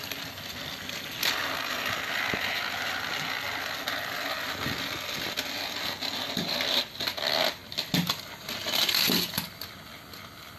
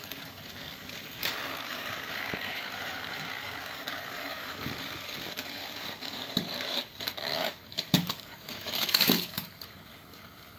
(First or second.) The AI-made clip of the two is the second